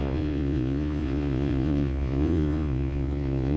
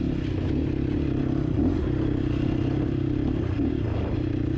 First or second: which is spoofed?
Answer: first